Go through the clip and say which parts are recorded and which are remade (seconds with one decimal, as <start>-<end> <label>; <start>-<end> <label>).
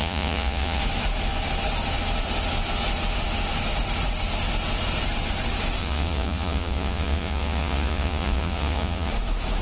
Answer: 0.0-0.8 remade; 0.8-5.8 recorded; 5.8-9.1 remade; 9.1-9.6 recorded